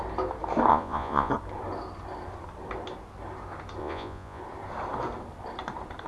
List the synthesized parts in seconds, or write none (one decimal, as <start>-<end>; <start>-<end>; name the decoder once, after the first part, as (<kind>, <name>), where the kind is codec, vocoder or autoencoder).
0.7-1.3 (vocoder, Vocos); 3.8-4.4